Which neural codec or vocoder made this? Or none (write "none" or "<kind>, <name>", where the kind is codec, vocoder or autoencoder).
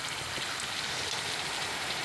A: none